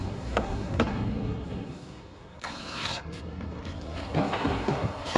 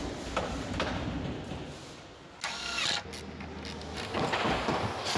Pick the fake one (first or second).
first